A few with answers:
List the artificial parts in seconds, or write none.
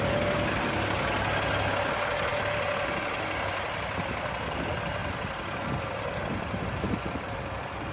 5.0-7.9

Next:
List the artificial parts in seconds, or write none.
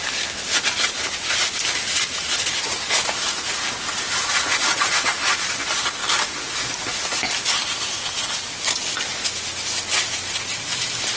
none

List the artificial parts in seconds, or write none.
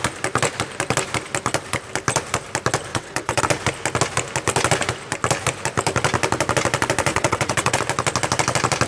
2.9-3.4; 7.1-7.8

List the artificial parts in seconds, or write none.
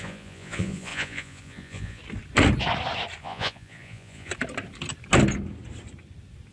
0.0-2.0; 3.2-4.3